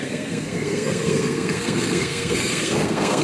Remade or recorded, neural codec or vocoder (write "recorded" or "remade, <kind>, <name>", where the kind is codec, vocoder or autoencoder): remade, codec, SNAC